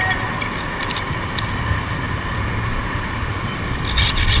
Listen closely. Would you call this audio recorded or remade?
recorded